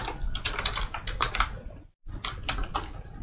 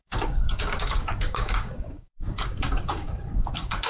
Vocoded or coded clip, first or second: second